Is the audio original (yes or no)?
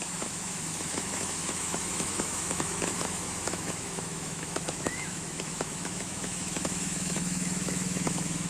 no